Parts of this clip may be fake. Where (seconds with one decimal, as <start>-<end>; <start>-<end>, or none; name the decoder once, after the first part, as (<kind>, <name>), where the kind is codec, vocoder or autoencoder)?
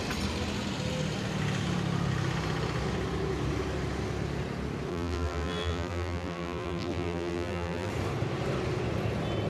4.9-7.9 (vocoder, BigVGAN v2)